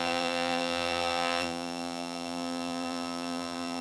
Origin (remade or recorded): remade